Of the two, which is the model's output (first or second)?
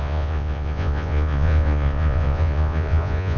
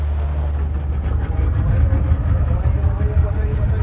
first